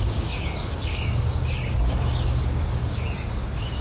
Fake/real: fake